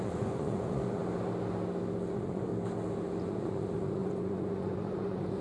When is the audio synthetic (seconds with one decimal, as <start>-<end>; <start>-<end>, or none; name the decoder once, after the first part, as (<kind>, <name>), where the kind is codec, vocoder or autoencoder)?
0.0-1.0 (vocoder, Vocos); 2.1-2.5; 3.2-5.4